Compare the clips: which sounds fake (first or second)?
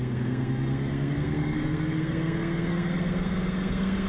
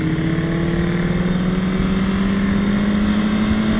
first